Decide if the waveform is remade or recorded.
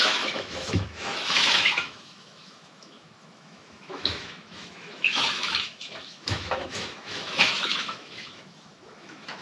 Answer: remade